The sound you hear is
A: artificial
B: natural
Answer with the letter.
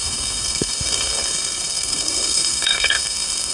A